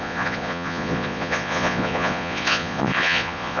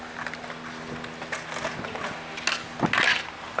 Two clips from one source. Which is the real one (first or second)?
second